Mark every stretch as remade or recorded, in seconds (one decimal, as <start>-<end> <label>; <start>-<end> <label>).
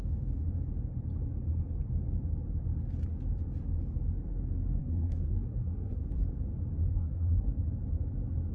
0.0-4.8 recorded; 4.8-6.0 remade; 6.0-6.9 recorded; 6.9-7.5 remade; 7.5-8.5 recorded